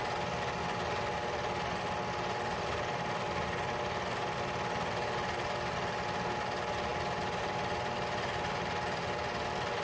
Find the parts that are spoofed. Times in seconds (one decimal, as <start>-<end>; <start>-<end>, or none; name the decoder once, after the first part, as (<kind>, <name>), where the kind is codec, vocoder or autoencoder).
none